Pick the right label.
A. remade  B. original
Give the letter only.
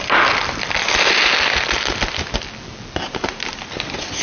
B